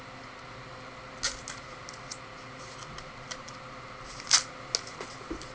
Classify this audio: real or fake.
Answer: real